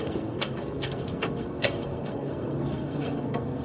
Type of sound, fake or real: fake